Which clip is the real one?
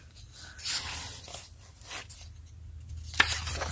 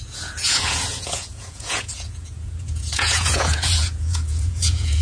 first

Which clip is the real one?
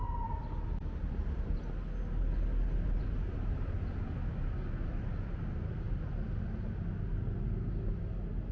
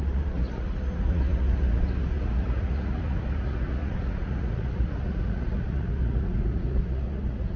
first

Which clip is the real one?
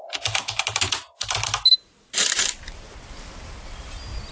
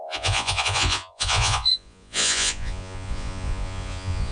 first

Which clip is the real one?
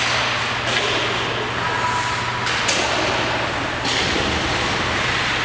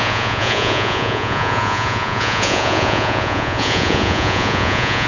first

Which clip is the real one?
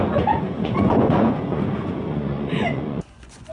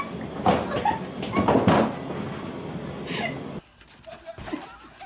second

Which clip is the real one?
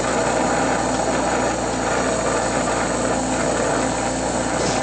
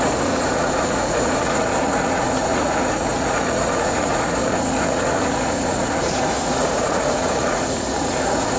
first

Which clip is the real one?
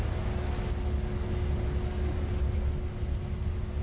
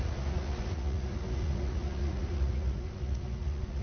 first